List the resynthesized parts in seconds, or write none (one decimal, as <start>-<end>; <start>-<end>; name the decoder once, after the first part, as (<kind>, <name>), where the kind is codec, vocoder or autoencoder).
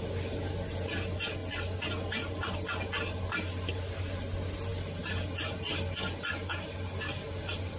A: none